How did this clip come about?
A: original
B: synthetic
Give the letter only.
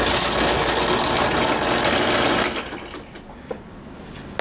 A